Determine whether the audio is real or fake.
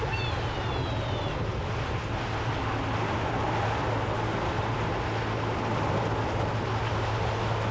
real